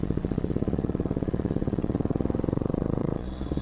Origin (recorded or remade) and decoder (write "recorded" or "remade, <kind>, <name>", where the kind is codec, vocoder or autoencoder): remade, vocoder, Vocos